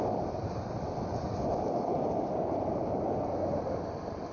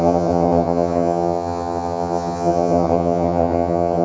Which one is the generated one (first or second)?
second